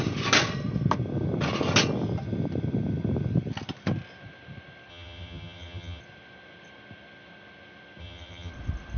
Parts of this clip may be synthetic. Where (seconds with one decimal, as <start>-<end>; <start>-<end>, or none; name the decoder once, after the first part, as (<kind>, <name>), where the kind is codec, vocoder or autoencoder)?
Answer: 4.9-6.0 (vocoder, HiFi-GAN); 8.0-8.5